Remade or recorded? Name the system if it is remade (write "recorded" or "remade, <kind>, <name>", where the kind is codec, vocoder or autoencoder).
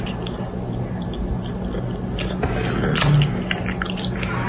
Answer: recorded